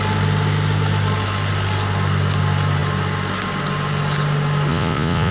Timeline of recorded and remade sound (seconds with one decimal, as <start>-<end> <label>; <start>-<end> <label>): 0.0-4.7 recorded; 4.7-5.3 remade